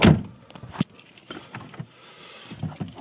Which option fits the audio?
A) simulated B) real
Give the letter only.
B